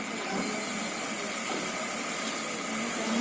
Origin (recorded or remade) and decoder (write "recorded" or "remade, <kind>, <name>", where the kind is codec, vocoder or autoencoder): recorded